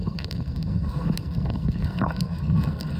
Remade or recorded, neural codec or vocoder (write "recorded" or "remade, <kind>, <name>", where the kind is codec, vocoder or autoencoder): remade, codec, SNAC